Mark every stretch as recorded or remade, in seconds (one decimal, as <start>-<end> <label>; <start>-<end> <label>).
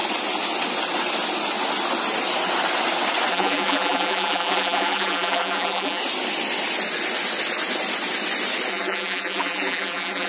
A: 0.0-3.3 recorded; 3.3-6.0 remade; 6.0-8.7 recorded; 8.7-10.3 remade